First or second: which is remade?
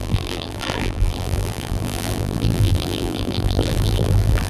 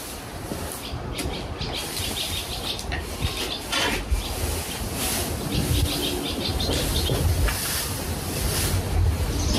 first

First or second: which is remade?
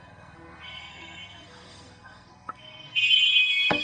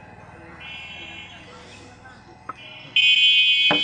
first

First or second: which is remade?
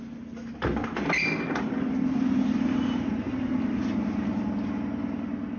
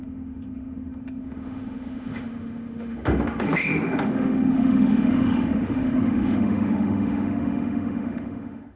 second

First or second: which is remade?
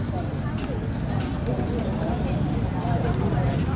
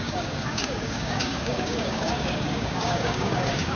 second